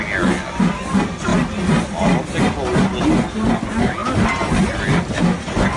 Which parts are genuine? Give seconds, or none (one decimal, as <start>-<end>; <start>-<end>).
0.0-5.8